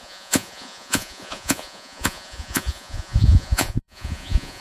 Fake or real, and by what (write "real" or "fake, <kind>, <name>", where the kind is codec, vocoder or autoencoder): fake, vocoder, Vocos